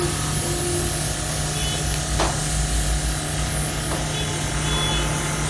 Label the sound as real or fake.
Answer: real